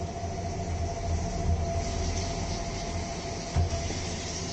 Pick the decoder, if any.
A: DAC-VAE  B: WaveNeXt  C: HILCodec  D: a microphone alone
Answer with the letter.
D